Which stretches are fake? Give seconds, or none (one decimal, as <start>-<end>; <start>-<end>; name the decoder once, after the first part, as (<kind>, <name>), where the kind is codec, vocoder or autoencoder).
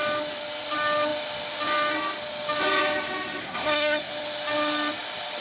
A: 3.4-4.1 (codec, SNAC)